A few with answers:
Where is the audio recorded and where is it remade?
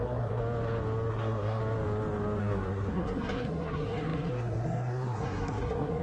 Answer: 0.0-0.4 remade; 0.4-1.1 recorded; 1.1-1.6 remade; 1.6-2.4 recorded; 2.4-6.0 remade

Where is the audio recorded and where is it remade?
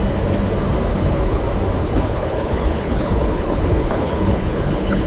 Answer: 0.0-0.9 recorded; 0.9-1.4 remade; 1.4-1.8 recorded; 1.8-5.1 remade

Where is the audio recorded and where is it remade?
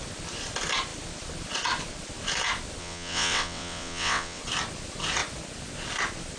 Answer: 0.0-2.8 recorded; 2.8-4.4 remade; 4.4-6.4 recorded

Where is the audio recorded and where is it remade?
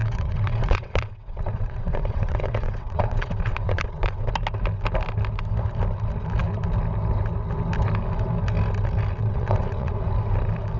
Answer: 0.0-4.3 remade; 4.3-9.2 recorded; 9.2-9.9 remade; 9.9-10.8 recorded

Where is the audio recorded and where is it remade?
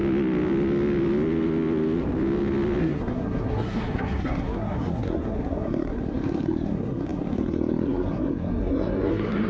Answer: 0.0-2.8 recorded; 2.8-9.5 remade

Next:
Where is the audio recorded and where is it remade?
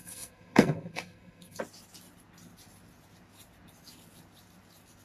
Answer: 0.0-1.6 remade; 1.6-5.0 recorded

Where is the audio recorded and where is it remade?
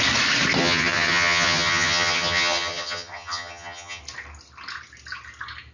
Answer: 0.0-0.6 recorded; 0.6-4.0 remade; 4.0-5.7 recorded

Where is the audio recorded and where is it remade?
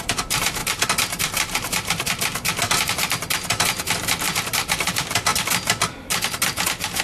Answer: 0.0-5.3 remade; 5.3-7.0 recorded